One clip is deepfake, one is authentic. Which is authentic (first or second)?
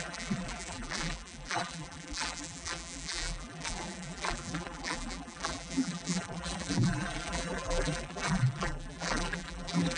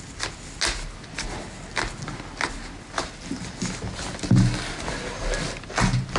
second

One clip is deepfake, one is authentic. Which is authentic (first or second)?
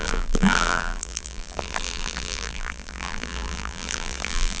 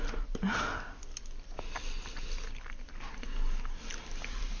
second